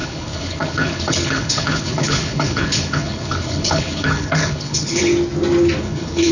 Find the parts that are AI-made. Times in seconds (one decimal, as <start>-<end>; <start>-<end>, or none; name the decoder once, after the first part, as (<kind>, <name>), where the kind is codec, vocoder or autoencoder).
0.0-5.1 (codec, HILCodec); 5.8-6.3